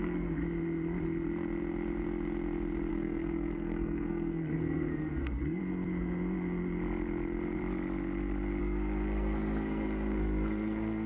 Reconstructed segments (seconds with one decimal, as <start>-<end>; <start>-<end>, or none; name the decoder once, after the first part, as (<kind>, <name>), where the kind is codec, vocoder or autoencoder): 0.0-0.4 (codec, SNAC); 2.9-5.6; 8.6-11.1